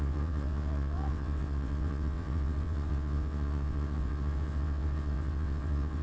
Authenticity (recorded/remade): remade